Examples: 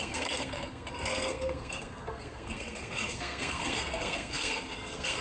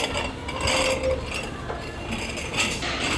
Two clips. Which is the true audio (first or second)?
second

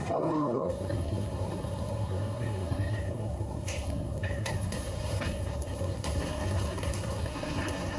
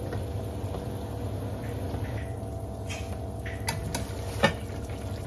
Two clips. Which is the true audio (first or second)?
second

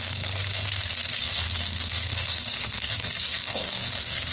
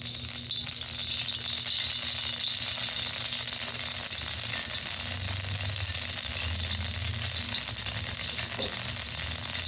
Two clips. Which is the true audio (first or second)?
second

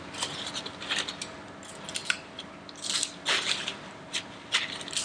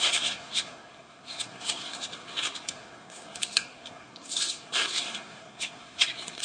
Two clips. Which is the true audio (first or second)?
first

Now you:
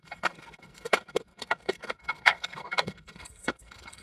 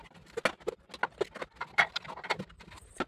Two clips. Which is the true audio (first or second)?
second